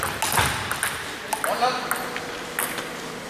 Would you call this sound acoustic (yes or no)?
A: yes